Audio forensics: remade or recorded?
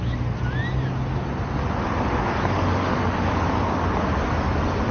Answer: recorded